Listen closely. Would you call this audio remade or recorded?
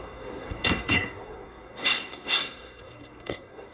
remade